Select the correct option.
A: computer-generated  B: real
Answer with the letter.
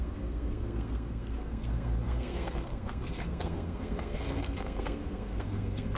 A